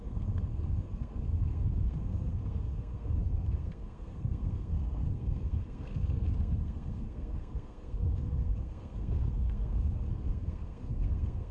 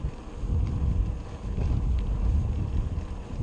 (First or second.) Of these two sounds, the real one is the second